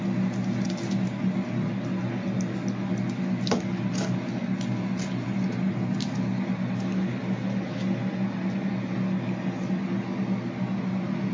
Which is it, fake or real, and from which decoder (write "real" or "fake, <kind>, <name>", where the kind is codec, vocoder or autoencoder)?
real